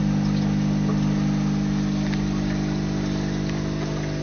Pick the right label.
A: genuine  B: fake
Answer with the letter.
A